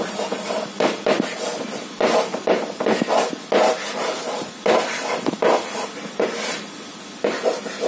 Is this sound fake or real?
real